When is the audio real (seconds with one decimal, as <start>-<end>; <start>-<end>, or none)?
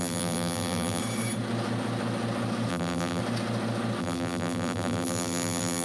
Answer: 1.0-2.7; 3.2-4.0